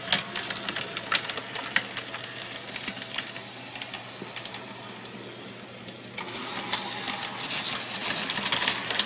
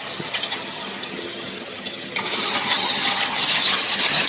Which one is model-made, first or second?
second